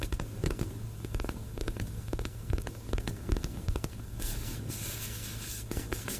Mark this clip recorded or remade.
remade